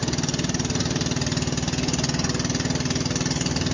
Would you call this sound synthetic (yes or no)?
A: no